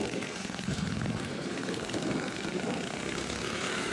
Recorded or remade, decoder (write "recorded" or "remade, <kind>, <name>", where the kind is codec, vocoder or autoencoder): remade, codec, SNAC